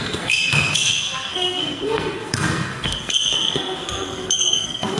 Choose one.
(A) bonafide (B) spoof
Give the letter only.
B